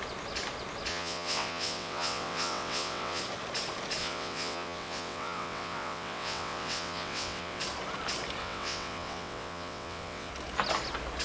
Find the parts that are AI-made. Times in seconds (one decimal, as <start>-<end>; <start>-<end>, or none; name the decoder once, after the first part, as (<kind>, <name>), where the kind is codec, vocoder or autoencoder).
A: 0.9-3.2 (vocoder, WaveNeXt); 4.0-7.6; 8.4-10.3